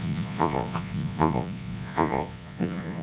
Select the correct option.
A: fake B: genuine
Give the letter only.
A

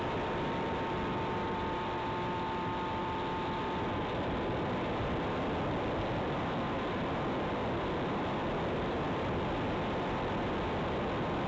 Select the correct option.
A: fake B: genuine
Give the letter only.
B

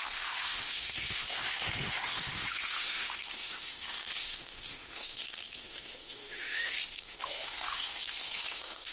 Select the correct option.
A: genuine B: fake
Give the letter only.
B